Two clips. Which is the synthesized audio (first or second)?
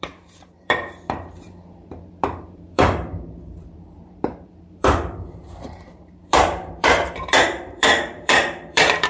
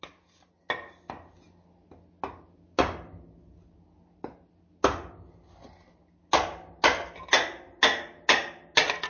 first